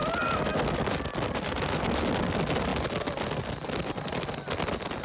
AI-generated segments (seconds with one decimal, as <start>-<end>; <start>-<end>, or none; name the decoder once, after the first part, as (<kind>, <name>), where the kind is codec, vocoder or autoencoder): none